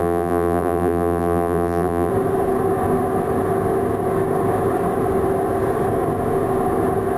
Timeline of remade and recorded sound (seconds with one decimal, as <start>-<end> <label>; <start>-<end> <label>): 0.0-2.1 remade; 2.1-7.2 recorded